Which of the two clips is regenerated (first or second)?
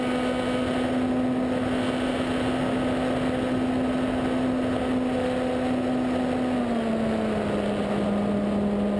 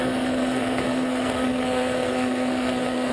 second